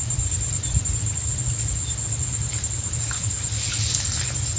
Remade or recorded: recorded